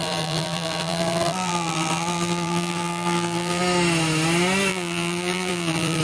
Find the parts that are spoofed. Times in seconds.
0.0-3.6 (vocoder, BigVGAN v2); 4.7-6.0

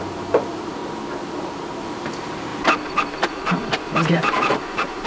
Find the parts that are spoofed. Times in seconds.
0.0-0.8 (vocoder, BigVGAN v2); 1.5-5.1

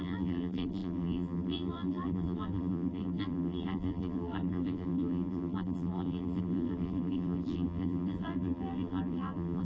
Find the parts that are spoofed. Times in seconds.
0.0-9.6 (vocoder, BigVGAN v2)